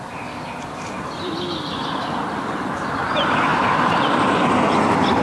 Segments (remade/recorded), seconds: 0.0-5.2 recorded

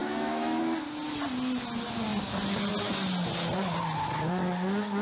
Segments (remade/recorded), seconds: 0.0-0.6 remade; 0.6-5.0 recorded

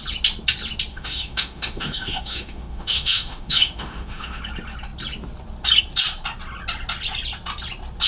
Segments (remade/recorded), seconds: 0.0-0.9 recorded; 0.9-4.4 remade; 4.4-8.1 recorded

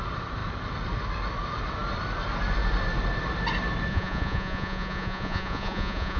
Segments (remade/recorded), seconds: 0.0-3.9 recorded; 3.9-6.2 remade

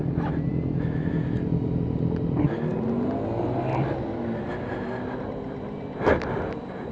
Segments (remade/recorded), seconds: 0.0-6.9 recorded

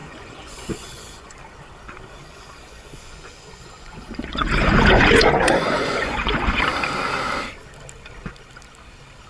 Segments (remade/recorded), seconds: 0.0-1.3 remade; 1.3-2.2 recorded; 2.2-6.6 remade; 6.6-9.3 recorded